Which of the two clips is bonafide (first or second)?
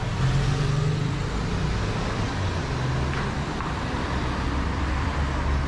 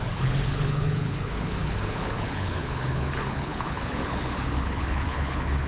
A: first